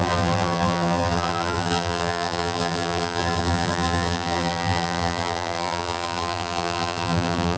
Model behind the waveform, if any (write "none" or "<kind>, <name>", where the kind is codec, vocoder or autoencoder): vocoder, BigVGAN v2